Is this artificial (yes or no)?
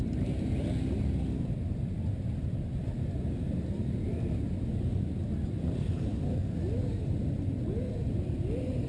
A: no